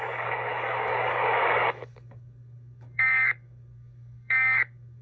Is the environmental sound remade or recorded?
remade